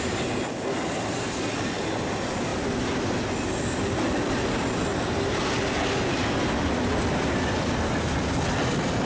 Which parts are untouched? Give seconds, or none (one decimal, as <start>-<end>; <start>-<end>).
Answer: 0.0-9.1